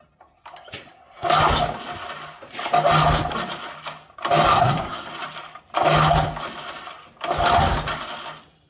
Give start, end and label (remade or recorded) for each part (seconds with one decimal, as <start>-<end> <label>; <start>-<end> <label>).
0.0-4.5 recorded; 4.5-5.1 remade; 5.1-8.7 recorded